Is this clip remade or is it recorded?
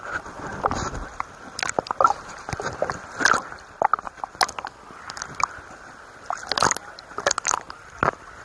recorded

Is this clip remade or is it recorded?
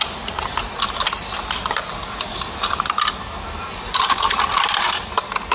recorded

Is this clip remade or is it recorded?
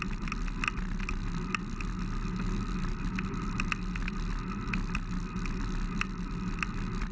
recorded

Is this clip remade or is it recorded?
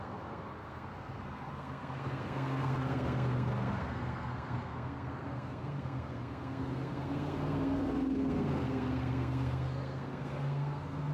remade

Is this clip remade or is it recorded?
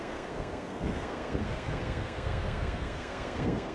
remade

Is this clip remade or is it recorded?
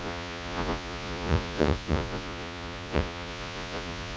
remade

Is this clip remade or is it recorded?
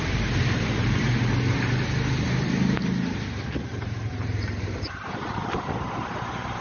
remade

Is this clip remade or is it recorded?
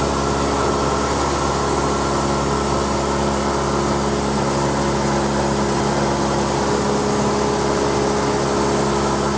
recorded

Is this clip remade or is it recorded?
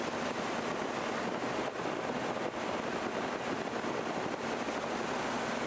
recorded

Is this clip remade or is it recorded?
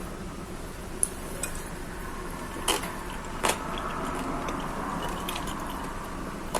recorded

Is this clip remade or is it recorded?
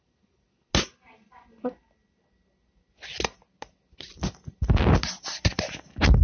recorded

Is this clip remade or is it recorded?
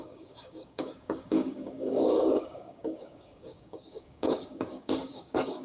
remade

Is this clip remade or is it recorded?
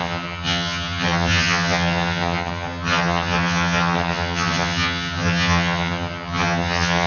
remade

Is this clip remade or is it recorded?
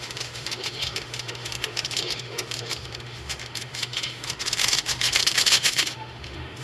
remade